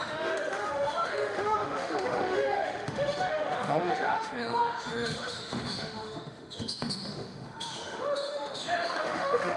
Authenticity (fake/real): fake